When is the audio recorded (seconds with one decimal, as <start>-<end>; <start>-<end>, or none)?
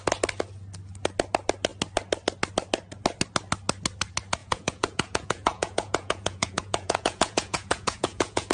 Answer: 0.0-4.4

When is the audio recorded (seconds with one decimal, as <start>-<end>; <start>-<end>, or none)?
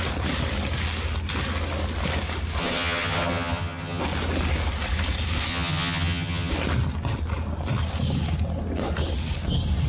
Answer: 0.0-2.6; 4.0-5.5; 6.5-9.9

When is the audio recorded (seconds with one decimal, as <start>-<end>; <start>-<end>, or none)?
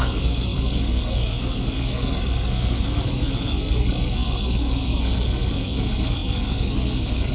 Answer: none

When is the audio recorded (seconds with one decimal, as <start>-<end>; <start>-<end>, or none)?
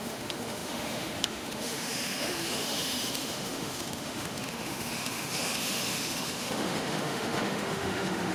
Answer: none